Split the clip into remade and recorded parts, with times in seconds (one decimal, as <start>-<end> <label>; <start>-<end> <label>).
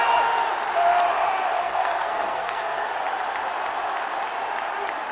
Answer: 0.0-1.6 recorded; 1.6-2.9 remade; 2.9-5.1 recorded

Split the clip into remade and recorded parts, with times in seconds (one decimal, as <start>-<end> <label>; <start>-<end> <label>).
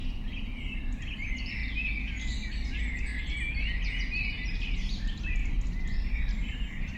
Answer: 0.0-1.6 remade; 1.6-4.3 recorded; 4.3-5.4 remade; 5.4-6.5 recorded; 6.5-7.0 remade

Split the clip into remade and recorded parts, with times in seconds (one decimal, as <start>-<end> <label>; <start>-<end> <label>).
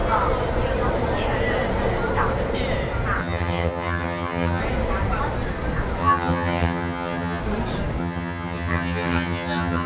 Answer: 0.0-3.2 recorded; 3.2-4.6 remade; 4.6-6.0 recorded; 6.0-7.4 remade; 7.4-8.0 recorded; 8.0-9.9 remade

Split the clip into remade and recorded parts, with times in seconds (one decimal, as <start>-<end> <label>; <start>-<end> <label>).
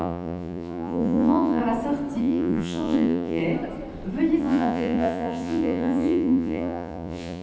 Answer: 0.0-1.6 remade; 1.6-2.2 recorded; 2.2-3.4 remade; 3.4-4.4 recorded; 4.4-7.4 remade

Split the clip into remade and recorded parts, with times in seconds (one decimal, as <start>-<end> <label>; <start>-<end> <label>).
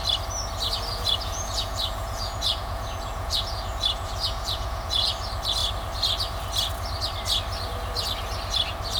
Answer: 0.0-0.9 recorded; 0.9-5.1 remade; 5.1-9.0 recorded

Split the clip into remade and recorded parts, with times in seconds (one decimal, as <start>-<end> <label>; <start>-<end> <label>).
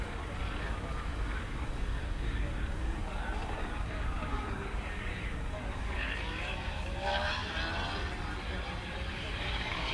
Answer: 0.0-7.4 remade; 7.4-9.1 recorded; 9.1-9.9 remade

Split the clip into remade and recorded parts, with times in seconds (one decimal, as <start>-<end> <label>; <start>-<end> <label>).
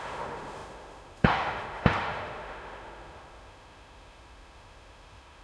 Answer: 0.0-5.4 remade